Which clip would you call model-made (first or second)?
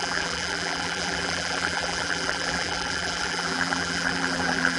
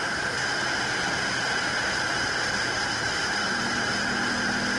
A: first